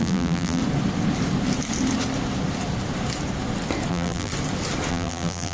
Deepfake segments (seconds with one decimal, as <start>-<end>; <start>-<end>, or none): 0.0-0.6; 3.9-4.3; 4.9-5.5